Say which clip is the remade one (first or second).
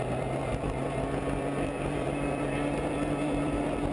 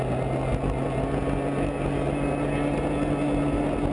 first